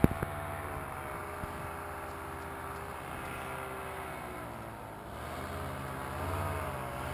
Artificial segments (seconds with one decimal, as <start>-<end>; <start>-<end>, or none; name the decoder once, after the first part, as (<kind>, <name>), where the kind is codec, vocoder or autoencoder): none